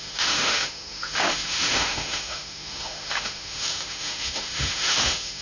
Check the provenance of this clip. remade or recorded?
remade